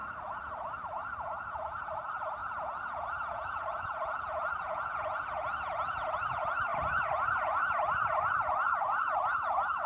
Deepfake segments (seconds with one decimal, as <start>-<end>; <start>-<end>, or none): 2.4-5.2